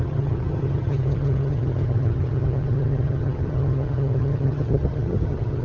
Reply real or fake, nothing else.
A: fake